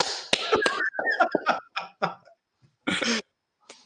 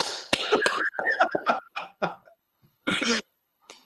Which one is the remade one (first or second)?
second